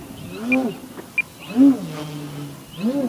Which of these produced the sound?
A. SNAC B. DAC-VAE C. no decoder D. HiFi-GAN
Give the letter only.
C